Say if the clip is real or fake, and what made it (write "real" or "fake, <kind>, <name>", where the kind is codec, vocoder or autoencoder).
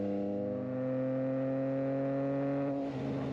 real